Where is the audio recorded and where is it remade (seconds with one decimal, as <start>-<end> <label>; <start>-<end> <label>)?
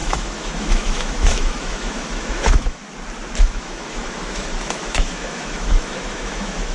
0.0-2.8 remade; 2.8-3.4 recorded; 3.4-6.7 remade